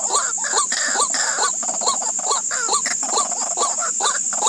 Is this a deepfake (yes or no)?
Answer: no